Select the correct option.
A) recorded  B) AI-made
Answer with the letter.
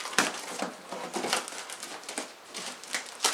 A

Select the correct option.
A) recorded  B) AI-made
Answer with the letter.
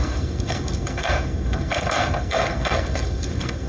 B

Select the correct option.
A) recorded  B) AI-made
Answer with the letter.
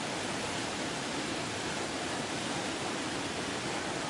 A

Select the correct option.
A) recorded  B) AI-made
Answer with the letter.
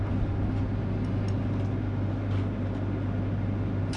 A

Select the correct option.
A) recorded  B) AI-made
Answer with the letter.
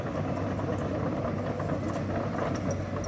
A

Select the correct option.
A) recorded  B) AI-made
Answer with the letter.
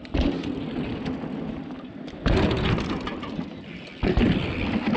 A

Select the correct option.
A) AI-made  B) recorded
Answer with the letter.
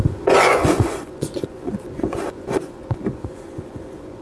A